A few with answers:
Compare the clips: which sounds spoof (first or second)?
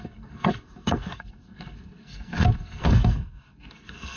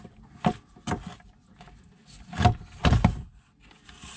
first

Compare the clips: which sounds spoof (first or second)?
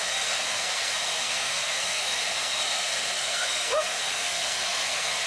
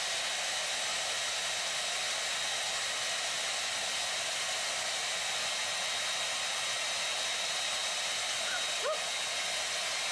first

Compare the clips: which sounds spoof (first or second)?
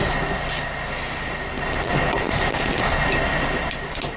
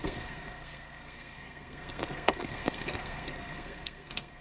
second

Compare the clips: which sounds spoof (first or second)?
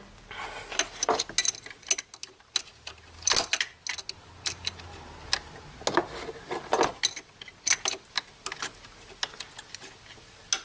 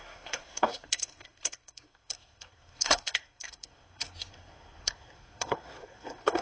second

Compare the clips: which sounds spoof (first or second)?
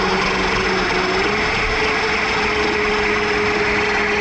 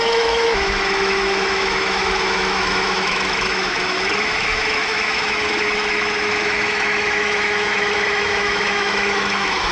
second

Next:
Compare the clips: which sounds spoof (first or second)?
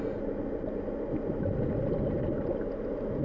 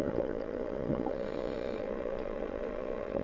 second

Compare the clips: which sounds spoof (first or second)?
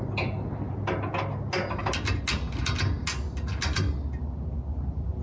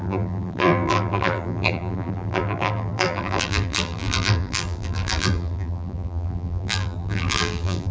second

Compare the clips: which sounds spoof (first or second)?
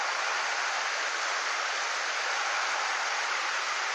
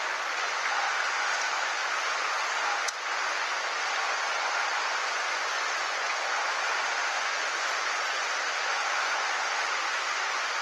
second